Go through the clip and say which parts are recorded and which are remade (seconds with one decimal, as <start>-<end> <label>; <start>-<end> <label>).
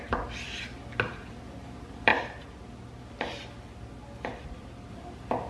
0.0-5.5 recorded